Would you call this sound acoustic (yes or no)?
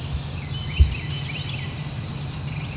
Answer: yes